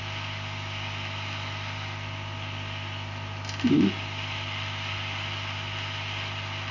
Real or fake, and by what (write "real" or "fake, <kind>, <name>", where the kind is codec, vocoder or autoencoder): real